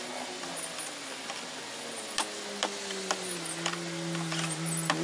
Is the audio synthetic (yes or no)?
no